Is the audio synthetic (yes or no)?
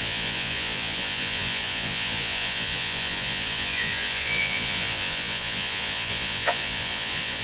yes